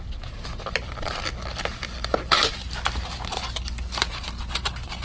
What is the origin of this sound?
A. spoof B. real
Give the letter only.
B